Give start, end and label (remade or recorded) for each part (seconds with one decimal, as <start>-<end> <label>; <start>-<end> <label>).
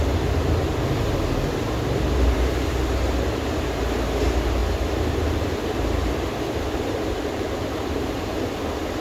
0.0-4.6 recorded; 4.6-8.6 remade; 8.6-9.0 recorded